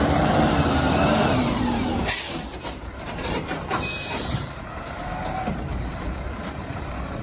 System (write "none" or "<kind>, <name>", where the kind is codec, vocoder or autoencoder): vocoder, BigVGAN v2